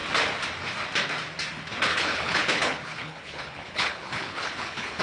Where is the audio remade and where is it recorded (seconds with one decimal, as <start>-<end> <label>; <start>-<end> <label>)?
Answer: 0.0-1.9 recorded; 1.9-5.0 remade

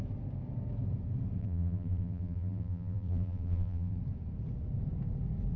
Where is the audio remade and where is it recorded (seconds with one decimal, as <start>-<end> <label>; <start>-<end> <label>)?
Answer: 0.0-1.4 recorded; 1.4-4.0 remade; 4.0-5.6 recorded

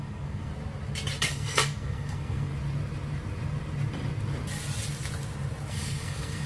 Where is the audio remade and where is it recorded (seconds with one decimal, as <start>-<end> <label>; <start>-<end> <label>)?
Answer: 0.0-0.5 remade; 0.5-1.2 recorded; 1.2-2.5 remade; 2.5-5.7 recorded; 5.7-6.5 remade